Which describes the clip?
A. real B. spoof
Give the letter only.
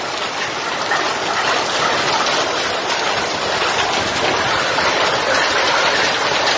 A